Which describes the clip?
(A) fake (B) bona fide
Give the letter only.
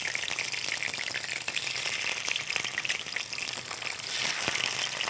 B